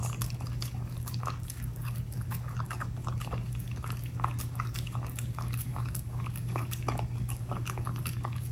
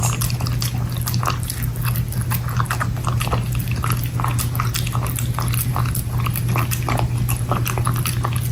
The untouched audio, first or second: second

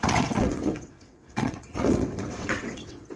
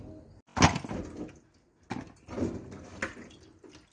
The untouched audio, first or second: second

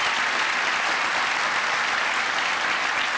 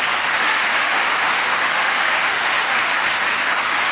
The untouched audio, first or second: first